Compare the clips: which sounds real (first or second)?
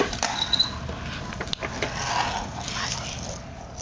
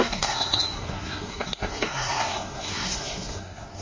first